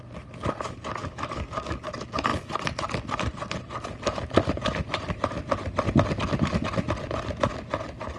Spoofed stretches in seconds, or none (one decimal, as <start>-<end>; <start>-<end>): 1.0-1.9